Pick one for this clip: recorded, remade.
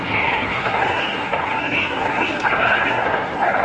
remade